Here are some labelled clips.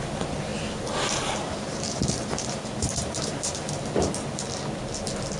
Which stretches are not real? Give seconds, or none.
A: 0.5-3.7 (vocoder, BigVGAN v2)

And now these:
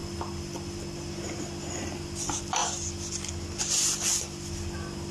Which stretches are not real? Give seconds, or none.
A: none

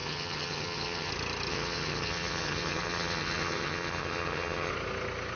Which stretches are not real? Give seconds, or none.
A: 0.0-1.1 (vocoder, HiFi-GAN); 1.5-4.7

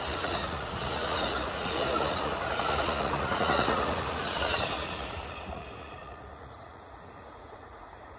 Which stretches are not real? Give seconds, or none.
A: 0.0-8.2 (vocoder, Vocos)

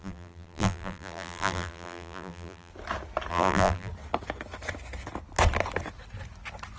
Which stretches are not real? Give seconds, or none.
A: 0.0-2.7 (vocoder, BigVGAN v2); 3.3-3.9